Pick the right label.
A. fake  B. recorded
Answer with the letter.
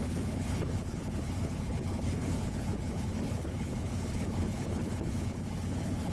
A